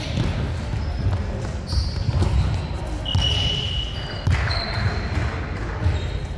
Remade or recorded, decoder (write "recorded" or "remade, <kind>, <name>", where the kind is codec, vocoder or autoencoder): recorded